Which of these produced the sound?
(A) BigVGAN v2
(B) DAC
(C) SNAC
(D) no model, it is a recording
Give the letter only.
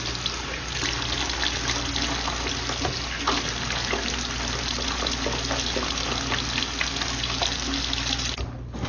D